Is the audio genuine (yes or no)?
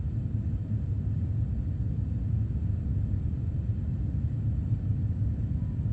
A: yes